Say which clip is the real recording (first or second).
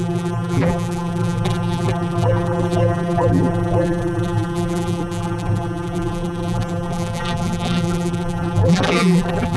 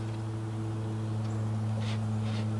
second